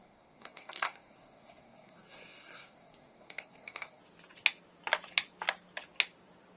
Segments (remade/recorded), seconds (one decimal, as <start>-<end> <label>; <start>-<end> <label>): 0.0-4.0 remade; 4.0-6.6 recorded